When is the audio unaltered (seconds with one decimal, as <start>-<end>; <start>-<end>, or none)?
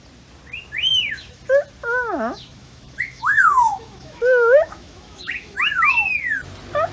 0.0-0.9; 1.4-1.8; 5.9-6.9